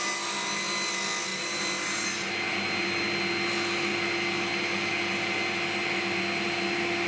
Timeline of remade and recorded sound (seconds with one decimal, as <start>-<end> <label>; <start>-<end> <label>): 0.0-7.1 recorded